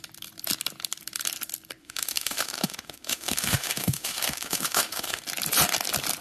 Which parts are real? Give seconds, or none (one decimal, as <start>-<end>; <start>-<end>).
0.0-1.8; 5.2-6.2